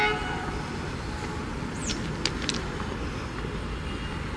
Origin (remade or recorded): recorded